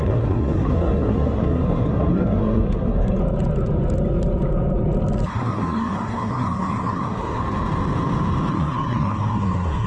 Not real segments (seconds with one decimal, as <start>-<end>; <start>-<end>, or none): 0.0-3.2; 5.3-7.4; 8.5-9.9